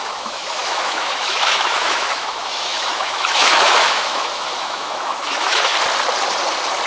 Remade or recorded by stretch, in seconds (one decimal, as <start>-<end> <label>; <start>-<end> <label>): 0.0-5.7 remade; 5.7-6.9 recorded